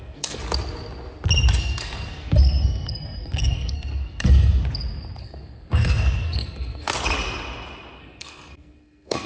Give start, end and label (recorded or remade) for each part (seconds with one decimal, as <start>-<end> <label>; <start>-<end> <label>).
0.0-0.4 remade; 0.4-1.6 recorded; 1.6-4.6 remade; 4.6-5.2 recorded; 5.2-6.9 remade; 6.9-8.0 recorded; 8.0-9.3 remade